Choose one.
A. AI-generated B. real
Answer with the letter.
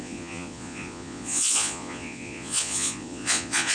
A